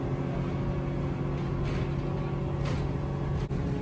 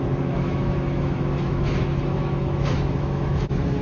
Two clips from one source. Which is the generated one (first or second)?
second